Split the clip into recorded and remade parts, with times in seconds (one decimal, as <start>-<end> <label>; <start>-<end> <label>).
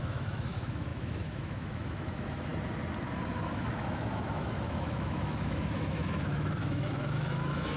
0.0-2.5 remade; 2.5-3.5 recorded; 3.5-7.8 remade